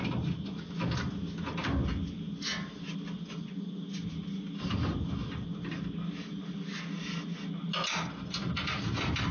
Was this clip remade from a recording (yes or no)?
no